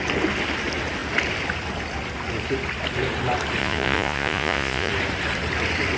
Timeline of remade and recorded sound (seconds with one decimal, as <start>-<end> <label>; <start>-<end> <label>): 0.0-3.6 recorded; 3.6-4.9 remade; 4.9-6.0 recorded